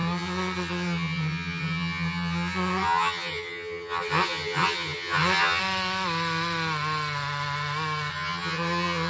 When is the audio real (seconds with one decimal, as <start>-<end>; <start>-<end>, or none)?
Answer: 5.6-8.1